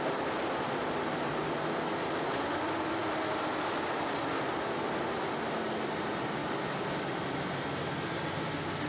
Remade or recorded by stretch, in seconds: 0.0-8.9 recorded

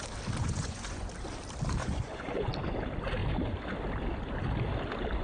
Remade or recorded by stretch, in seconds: 0.0-0.4 recorded; 0.4-1.1 remade; 1.1-1.8 recorded; 1.8-2.5 remade; 2.5-5.2 recorded

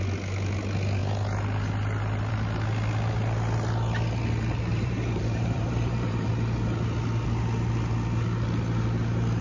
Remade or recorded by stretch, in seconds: 0.0-4.7 recorded; 4.7-6.3 remade; 6.3-9.4 recorded

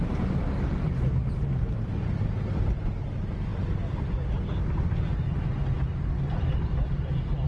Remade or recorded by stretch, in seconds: 0.0-7.5 recorded

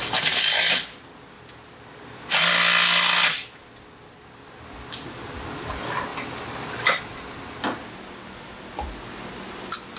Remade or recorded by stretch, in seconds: 0.0-10.0 recorded

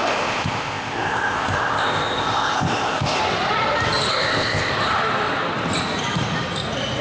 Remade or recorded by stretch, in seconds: 0.0-3.2 remade; 3.2-4.1 recorded; 4.1-4.7 remade; 4.7-7.0 recorded